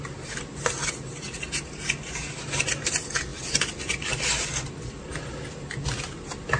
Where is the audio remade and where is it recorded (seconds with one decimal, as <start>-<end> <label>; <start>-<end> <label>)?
0.0-6.6 recorded